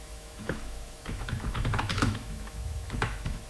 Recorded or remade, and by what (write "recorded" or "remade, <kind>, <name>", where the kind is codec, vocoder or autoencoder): remade, autoencoder, DAC-VAE